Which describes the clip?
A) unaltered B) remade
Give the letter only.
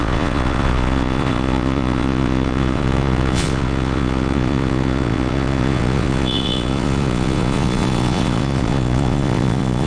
B